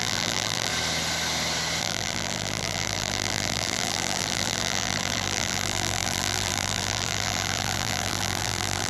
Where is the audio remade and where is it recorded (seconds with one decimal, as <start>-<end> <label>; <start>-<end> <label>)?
0.0-0.7 remade; 0.7-1.8 recorded; 1.8-8.9 remade